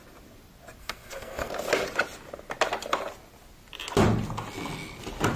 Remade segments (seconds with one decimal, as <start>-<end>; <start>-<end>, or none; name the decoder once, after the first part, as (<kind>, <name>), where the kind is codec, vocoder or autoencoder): 0.8-1.5 (codec, SNAC)